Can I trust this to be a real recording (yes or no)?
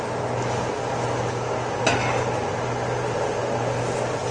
yes